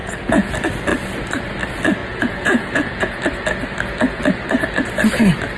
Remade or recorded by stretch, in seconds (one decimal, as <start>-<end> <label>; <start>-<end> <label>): 0.0-0.5 remade; 0.5-2.0 recorded; 2.0-3.2 remade; 3.2-5.6 recorded